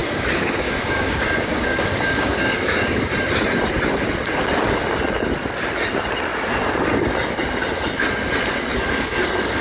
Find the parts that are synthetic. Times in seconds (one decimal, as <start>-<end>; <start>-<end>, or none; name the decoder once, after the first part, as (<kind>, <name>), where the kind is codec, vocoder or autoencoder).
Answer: 0.0-3.0 (codec, DAC)